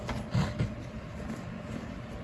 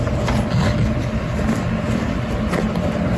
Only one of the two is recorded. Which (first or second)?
second